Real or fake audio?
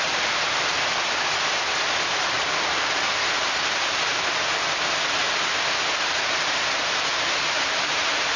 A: real